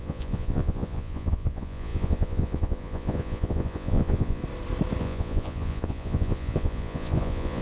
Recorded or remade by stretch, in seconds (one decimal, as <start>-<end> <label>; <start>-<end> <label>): 0.0-4.4 remade; 4.4-5.0 recorded; 5.0-7.6 remade

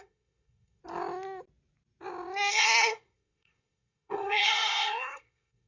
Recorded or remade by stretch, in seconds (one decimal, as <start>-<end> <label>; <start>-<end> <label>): 0.0-0.8 remade; 0.8-2.5 recorded; 2.5-5.7 remade

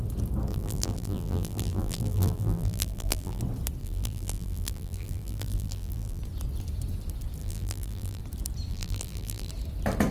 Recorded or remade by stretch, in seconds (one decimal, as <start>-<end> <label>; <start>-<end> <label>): 0.0-0.5 recorded; 0.5-3.4 remade; 3.4-3.8 recorded; 3.8-6.2 remade; 6.2-7.4 recorded; 7.4-8.2 remade; 8.2-8.7 recorded; 8.7-9.5 remade; 9.5-10.1 recorded

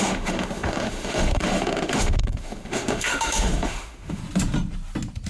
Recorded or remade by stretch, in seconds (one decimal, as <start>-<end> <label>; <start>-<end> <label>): 0.0-4.2 remade; 4.2-5.3 recorded